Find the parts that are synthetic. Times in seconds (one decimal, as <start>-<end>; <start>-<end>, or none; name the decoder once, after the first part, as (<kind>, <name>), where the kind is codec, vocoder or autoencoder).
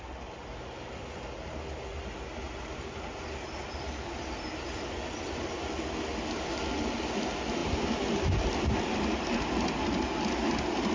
none